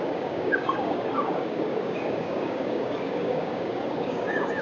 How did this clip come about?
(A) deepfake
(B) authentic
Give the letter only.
A